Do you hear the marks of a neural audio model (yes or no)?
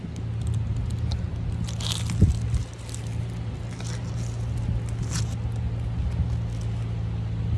no